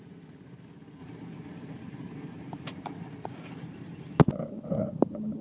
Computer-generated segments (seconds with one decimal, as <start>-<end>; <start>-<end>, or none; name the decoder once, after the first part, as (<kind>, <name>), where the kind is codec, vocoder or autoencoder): 1.0-4.2 (vocoder, BigVGAN v2)

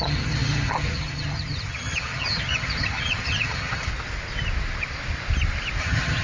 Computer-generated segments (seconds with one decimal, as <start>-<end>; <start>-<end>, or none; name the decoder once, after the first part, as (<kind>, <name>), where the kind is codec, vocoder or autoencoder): 0.0-3.9 (vocoder, HiFi-GAN); 5.8-6.2

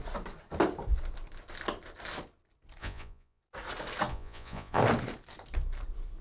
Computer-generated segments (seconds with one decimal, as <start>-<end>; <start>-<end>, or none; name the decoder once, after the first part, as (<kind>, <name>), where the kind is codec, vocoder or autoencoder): 2.8-3.4 (vocoder, Vocos); 4.1-4.8

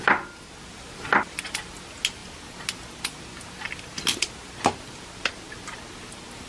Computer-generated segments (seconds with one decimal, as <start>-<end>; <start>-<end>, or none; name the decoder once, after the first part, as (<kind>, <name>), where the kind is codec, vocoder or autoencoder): none

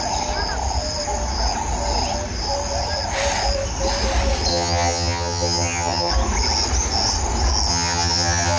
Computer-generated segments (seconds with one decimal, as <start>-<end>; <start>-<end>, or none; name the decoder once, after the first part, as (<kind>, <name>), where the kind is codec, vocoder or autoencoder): 4.5-6.1 (vocoder, HiFi-GAN); 7.7-8.6

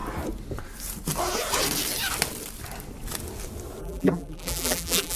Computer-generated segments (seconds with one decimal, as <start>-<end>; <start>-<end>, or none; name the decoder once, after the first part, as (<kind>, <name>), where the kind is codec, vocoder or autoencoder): 3.8-5.2 (vocoder, BigVGAN v2)

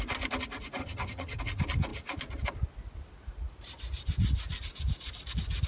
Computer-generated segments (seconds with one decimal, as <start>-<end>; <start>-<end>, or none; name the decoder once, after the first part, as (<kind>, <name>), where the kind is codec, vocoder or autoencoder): 0.8-1.4 (vocoder, HiFi-GAN)